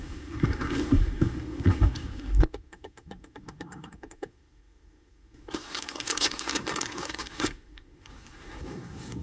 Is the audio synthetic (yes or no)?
yes